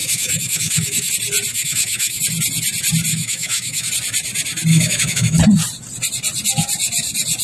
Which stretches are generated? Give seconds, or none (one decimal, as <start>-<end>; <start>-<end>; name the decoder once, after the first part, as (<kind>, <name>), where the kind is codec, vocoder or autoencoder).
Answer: 0.0-1.1 (autoencoder, DAC-VAE); 1.5-2.2; 3.1-3.9; 4.7-5.4